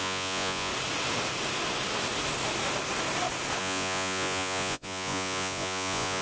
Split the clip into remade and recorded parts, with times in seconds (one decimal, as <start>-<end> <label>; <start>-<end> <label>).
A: 0.0-0.7 remade; 0.7-3.6 recorded; 3.6-6.2 remade